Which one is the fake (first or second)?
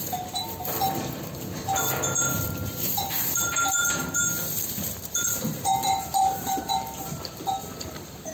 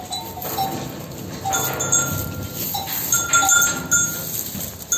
first